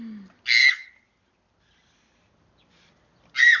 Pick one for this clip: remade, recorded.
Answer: recorded